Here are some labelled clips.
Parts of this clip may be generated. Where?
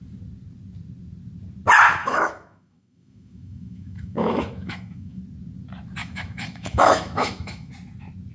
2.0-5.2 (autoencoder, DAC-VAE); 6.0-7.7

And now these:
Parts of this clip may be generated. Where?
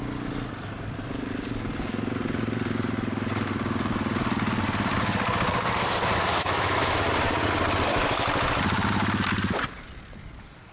6.3-7.0 (autoencoder, DAC-VAE)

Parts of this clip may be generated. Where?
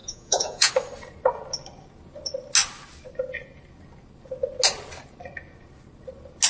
0.0-0.7 (vocoder, Vocos)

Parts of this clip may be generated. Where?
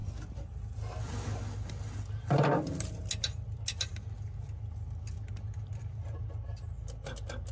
none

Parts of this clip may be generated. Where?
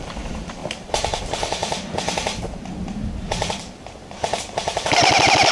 0.0-0.6 (vocoder, BigVGAN v2); 1.2-1.6; 3.5-5.5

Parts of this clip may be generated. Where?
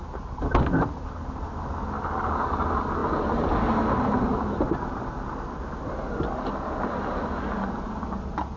none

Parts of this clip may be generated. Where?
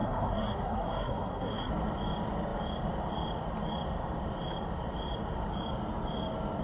0.0-1.7 (codec, SNAC)